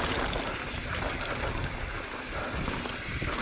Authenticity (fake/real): real